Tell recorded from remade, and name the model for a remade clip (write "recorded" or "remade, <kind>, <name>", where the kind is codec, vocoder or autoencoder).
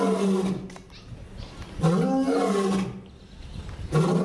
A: recorded